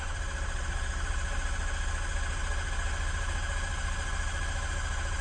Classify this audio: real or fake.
real